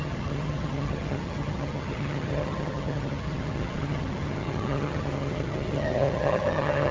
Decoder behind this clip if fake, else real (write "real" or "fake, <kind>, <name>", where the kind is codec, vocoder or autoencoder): fake, vocoder, HiFi-GAN